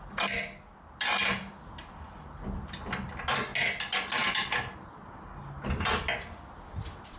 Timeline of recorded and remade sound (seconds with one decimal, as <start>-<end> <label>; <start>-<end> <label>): 0.0-7.2 recorded